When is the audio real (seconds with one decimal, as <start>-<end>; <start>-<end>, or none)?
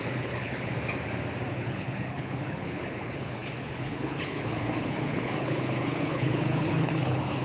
0.7-1.5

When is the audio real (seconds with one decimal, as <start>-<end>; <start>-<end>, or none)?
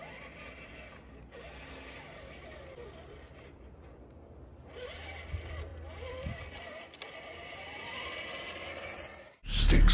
0.0-9.9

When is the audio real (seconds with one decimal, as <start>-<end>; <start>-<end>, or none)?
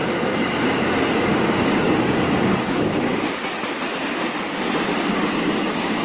0.0-0.6; 3.1-4.9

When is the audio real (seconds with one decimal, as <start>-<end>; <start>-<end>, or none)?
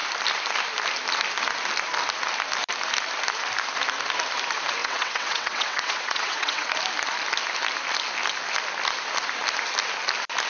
0.0-4.8; 6.7-10.5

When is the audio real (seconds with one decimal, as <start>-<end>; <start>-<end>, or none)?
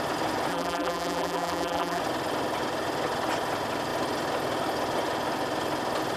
0.0-0.5; 2.0-6.2